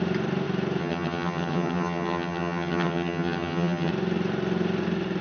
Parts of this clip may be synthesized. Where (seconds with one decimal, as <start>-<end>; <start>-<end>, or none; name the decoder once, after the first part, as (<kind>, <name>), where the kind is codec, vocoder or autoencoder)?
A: 0.8-3.9 (vocoder, HiFi-GAN)